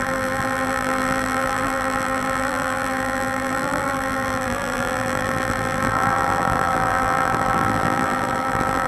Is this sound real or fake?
fake